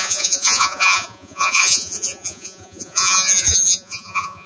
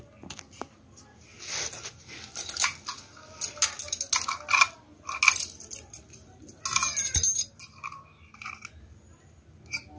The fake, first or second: first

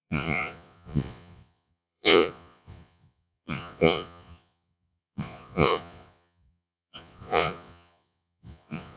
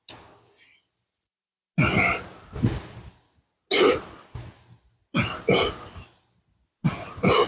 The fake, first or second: first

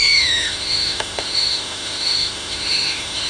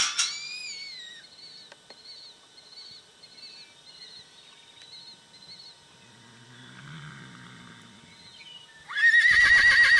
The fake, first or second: first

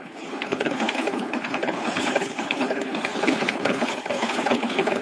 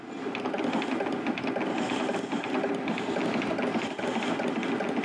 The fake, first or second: first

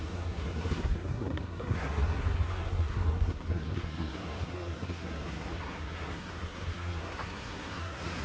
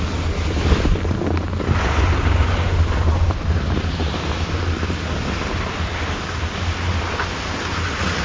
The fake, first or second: first